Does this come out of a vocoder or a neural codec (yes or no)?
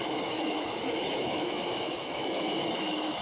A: yes